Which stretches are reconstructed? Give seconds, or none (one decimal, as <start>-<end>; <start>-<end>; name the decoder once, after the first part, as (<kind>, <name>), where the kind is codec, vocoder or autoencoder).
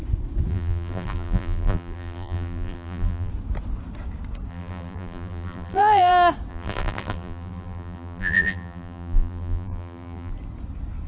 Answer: 0.5-3.3 (vocoder, BigVGAN v2); 4.5-6.1; 6.5-10.3